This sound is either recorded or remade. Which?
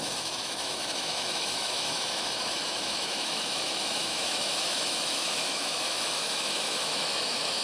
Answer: remade